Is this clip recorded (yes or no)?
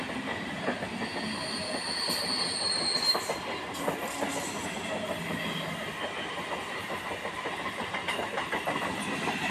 yes